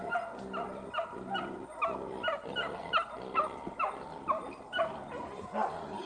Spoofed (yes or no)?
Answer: no